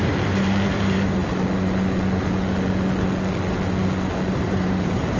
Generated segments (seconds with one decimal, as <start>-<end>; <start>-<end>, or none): 0.0-1.2; 4.3-5.2